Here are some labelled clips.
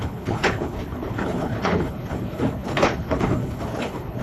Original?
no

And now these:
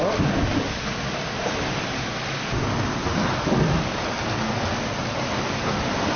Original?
yes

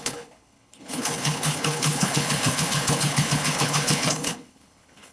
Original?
no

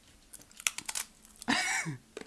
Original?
yes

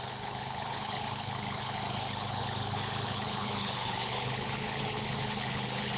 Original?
no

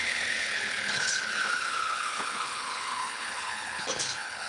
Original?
no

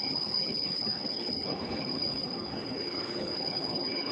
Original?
no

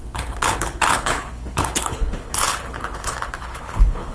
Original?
no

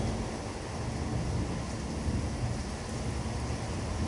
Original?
yes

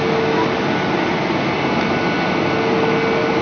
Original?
yes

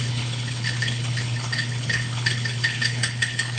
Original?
no